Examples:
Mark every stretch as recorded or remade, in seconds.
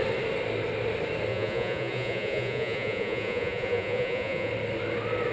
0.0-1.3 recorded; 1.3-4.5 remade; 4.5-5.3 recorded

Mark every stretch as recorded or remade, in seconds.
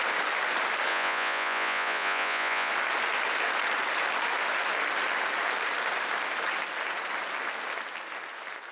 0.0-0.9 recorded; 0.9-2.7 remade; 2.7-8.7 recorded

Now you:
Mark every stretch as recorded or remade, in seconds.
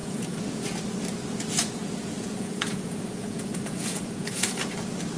0.0-0.6 remade; 0.6-1.6 recorded; 1.6-4.7 remade; 4.7-5.2 recorded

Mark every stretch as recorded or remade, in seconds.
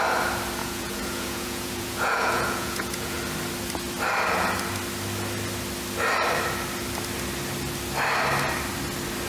0.0-0.6 recorded; 0.6-3.2 remade; 3.2-9.3 recorded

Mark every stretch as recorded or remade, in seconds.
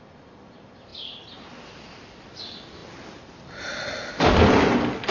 0.0-5.1 recorded